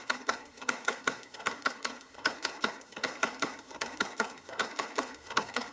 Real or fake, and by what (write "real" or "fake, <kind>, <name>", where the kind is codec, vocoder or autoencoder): fake, codec, SNAC